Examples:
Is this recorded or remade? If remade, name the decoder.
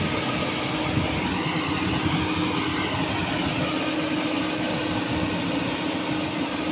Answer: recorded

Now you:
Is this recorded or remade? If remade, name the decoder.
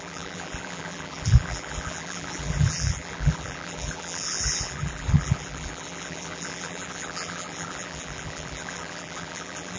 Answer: remade, vocoder, BigVGAN v2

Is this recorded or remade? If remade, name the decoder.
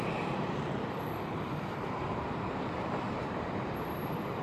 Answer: remade, vocoder, BigVGAN v2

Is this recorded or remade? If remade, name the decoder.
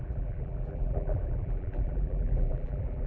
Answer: remade, vocoder, BigVGAN v2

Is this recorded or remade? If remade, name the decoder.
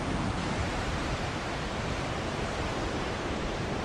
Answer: remade, vocoder, BigVGAN v2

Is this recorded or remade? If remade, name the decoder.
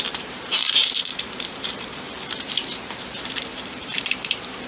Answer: remade, vocoder, BigVGAN v2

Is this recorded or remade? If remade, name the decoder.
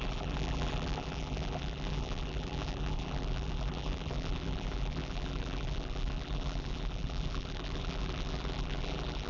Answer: remade, vocoder, BigVGAN v2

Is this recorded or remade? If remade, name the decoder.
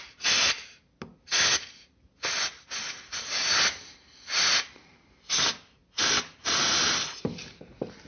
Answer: recorded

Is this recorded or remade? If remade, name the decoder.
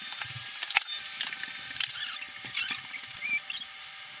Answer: remade, vocoder, BigVGAN v2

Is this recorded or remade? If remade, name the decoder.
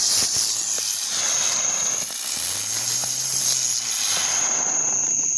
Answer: recorded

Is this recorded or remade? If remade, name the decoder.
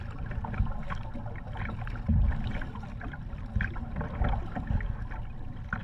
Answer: recorded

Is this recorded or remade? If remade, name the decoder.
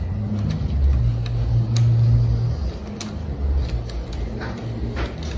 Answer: recorded